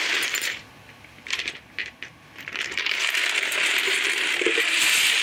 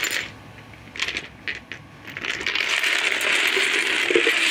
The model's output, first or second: first